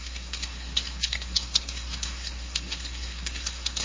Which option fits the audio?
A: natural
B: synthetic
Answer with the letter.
B